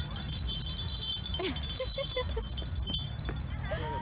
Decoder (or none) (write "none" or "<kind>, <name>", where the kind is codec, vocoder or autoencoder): none